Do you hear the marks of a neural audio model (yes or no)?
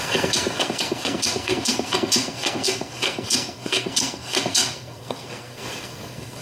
yes